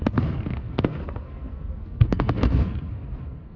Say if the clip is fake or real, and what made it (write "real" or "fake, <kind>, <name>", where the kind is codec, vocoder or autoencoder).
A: fake, codec, SNAC